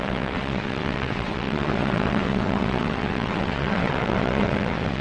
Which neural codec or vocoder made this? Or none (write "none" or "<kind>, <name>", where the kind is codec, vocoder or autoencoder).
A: vocoder, WaveNeXt